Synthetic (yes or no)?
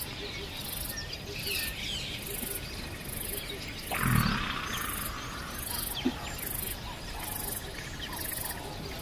no